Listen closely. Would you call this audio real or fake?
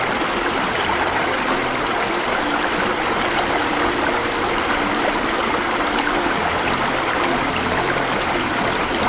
fake